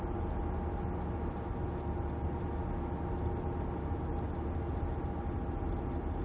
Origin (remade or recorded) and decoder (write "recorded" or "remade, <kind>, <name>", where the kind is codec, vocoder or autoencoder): recorded